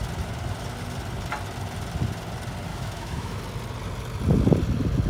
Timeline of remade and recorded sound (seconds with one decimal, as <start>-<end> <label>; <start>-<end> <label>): 0.0-2.7 recorded; 2.7-3.4 remade; 3.4-5.1 recorded